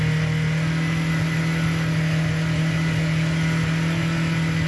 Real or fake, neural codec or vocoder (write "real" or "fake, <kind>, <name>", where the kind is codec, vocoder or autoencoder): real